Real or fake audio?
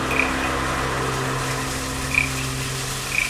real